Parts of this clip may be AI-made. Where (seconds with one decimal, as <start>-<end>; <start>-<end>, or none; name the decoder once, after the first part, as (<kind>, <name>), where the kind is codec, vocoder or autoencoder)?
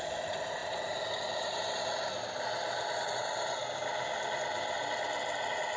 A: none